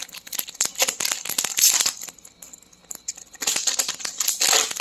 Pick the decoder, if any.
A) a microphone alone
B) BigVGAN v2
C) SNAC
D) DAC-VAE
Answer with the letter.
A